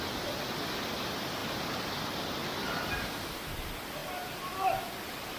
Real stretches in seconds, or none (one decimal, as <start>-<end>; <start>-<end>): 0.0-4.0; 4.8-5.4